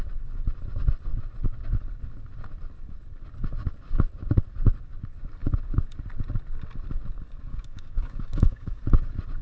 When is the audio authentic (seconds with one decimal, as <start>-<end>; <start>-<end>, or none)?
0.0-7.5; 8.8-9.4